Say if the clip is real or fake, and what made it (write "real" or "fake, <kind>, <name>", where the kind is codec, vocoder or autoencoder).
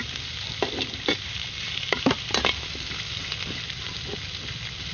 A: real